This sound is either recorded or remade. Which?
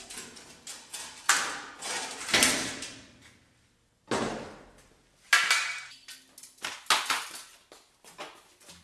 recorded